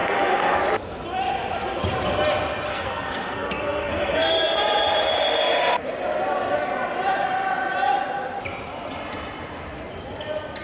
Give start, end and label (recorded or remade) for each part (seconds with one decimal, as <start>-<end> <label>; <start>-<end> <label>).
0.0-0.6 remade; 0.6-2.7 recorded; 2.7-4.3 remade; 4.3-10.6 recorded